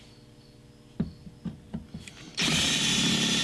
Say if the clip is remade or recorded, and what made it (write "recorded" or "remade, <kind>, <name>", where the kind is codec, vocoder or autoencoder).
recorded